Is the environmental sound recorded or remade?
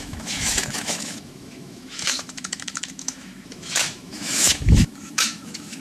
remade